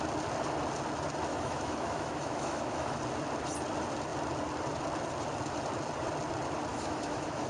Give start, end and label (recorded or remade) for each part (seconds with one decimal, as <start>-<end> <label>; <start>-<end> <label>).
0.0-1.3 recorded; 1.3-3.0 remade; 3.0-6.7 recorded; 6.7-7.5 remade